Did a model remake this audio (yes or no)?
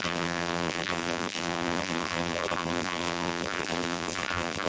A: yes